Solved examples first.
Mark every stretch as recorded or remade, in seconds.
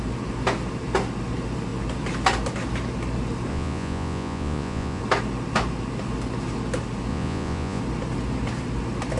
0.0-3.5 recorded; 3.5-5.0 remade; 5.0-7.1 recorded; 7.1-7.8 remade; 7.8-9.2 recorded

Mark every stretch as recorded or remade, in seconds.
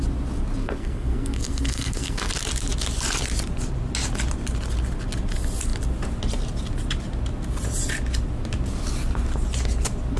0.0-0.6 recorded; 0.6-2.3 remade; 2.3-10.2 recorded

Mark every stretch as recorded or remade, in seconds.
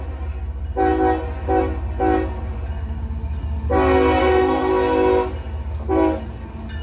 0.0-4.2 recorded; 4.2-4.7 remade; 4.7-6.8 recorded